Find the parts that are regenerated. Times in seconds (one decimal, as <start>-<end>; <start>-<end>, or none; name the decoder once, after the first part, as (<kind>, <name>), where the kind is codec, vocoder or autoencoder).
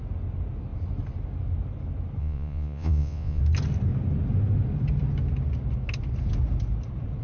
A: 2.2-3.4 (vocoder, Vocos)